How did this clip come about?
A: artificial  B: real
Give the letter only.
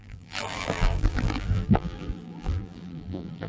A